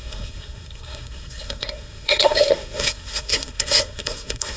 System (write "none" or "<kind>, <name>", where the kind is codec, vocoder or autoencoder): codec, SNAC